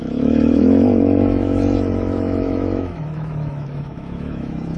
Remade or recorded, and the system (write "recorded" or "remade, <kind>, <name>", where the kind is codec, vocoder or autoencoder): remade, autoencoder, DAC-VAE